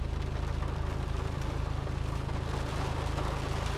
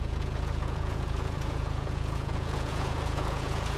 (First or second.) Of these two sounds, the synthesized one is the second